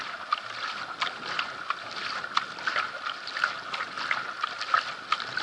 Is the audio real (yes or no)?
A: yes